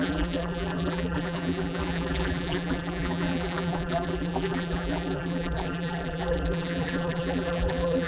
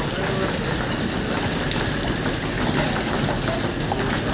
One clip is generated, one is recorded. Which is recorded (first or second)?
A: second